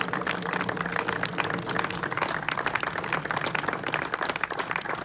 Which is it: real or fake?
real